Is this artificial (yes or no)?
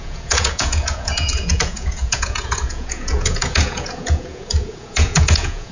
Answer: yes